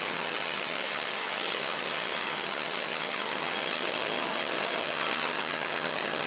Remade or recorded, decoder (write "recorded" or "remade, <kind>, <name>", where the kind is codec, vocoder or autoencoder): remade, vocoder, HiFi-GAN